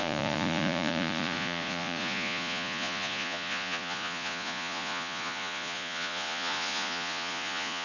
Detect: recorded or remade remade